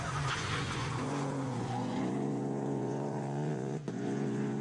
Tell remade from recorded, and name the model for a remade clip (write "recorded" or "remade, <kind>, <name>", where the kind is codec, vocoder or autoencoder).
remade, vocoder, Vocos